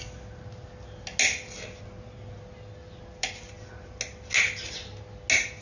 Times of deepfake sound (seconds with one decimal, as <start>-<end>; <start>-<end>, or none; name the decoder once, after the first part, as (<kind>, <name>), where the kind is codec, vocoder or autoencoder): none